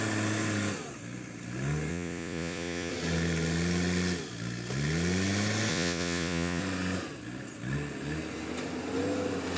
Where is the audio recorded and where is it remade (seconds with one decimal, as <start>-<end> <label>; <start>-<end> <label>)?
0.0-1.9 recorded; 1.9-2.9 remade; 2.9-5.7 recorded; 5.7-6.6 remade; 6.6-9.6 recorded